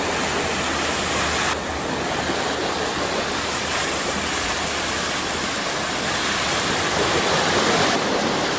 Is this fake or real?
real